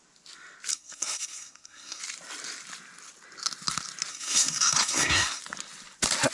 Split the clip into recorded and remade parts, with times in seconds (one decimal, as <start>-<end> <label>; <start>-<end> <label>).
0.0-0.7 recorded; 0.7-2.0 remade; 2.0-4.1 recorded; 4.1-5.4 remade; 5.4-6.3 recorded